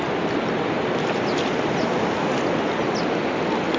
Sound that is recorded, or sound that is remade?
recorded